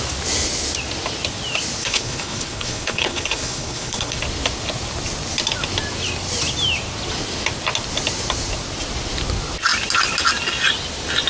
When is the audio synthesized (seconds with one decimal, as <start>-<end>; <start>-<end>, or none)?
1.8-4.2